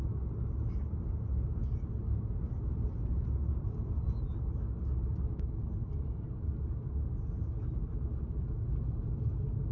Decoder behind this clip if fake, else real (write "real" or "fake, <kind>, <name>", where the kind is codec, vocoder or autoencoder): real